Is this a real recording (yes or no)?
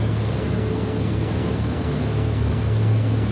no